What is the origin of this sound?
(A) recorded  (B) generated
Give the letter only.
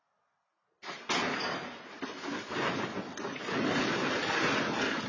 A